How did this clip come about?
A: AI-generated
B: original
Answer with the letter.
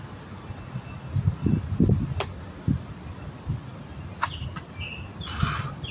B